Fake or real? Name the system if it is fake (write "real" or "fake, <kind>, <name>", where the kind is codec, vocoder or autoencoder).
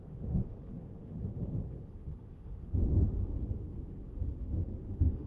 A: fake, autoencoder, DAC-VAE